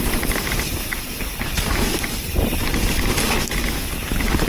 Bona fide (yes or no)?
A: yes